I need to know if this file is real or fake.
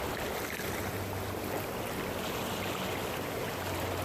real